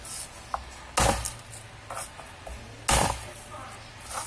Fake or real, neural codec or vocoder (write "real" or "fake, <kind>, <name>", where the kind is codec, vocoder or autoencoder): real